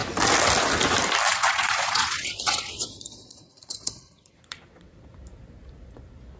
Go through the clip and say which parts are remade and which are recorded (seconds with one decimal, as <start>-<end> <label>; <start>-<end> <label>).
0.0-1.3 recorded; 1.3-5.1 remade; 5.1-6.4 recorded